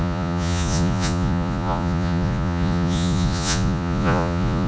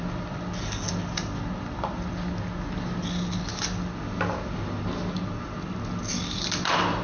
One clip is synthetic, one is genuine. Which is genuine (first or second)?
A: second